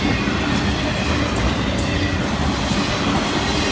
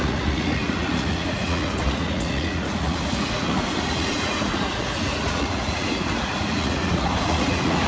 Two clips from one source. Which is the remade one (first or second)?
second